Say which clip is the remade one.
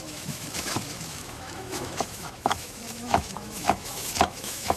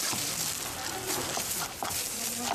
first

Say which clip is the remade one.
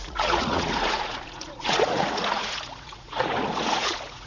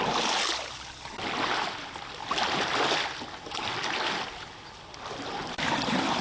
first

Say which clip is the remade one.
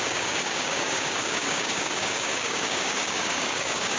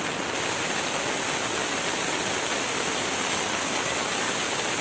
first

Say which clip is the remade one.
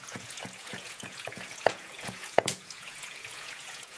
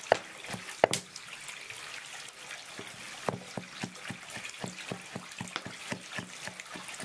first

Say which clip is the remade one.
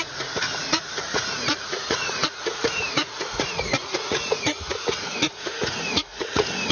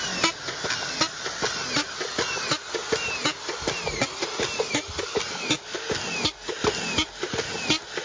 first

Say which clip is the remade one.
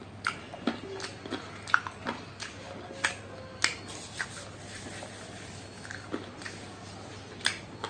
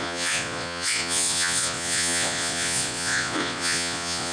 second